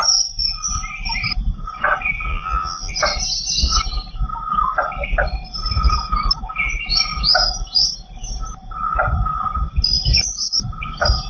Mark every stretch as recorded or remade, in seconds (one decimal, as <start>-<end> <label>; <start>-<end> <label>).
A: 0.0-2.3 recorded; 2.3-2.9 remade; 2.9-11.3 recorded